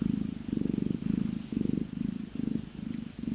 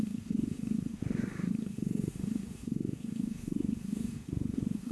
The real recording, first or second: first